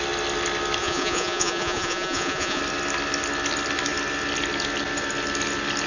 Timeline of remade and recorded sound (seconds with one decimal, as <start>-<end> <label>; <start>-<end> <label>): 0.0-0.8 recorded; 0.8-2.6 remade; 2.6-5.9 recorded